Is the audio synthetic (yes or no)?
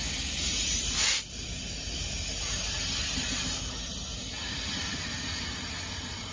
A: no